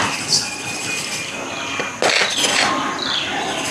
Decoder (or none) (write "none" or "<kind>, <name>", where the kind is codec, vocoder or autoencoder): none